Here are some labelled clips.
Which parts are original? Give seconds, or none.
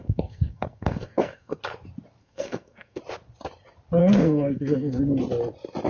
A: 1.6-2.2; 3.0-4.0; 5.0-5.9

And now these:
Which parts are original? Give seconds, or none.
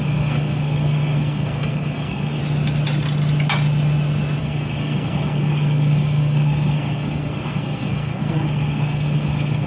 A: 2.4-4.4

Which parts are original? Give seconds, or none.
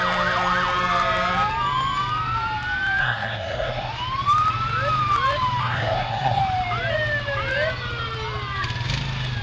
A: 0.0-3.0; 3.9-5.6; 6.4-9.4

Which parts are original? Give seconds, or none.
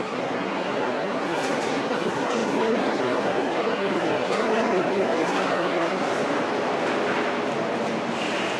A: 6.1-8.6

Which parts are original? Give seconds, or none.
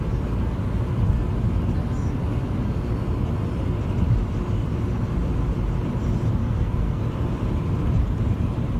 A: 0.0-6.4; 7.0-8.8